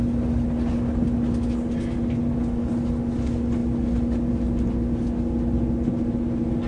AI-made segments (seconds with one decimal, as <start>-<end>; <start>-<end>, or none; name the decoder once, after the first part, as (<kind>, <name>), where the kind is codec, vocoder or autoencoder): none